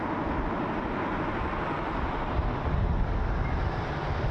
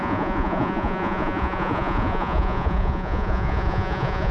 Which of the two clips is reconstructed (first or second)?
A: second